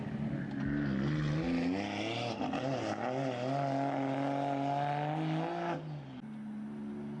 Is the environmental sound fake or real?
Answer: real